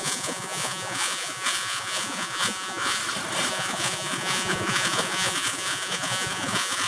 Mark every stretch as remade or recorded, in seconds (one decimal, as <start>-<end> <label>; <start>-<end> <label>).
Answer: 0.0-3.0 remade; 3.0-3.5 recorded; 3.5-6.9 remade

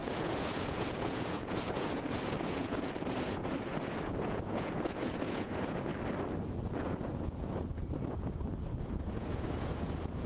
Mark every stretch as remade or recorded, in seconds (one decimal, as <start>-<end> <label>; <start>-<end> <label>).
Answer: 0.0-5.9 remade; 5.9-6.6 recorded; 6.6-10.3 remade

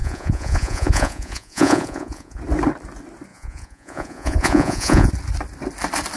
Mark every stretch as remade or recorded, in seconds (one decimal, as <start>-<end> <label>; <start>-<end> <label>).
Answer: 0.0-2.4 remade; 2.4-3.3 recorded; 3.3-5.1 remade; 5.1-6.2 recorded

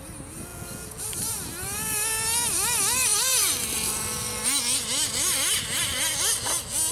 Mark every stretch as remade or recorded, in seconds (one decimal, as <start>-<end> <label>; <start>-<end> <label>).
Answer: 0.0-0.5 recorded; 0.5-1.0 remade; 1.0-6.9 recorded

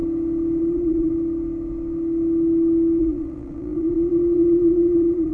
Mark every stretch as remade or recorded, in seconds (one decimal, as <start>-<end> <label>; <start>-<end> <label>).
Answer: 0.0-0.6 recorded; 0.6-1.1 remade; 1.1-3.0 recorded; 3.0-5.3 remade

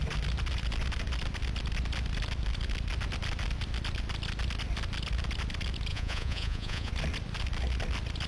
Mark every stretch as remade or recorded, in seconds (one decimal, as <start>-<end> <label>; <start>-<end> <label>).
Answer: 0.0-5.9 recorded; 5.9-6.9 remade; 6.9-8.3 recorded

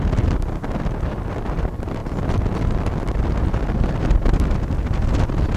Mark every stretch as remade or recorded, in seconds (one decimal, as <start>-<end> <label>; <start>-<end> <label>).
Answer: 0.0-5.6 recorded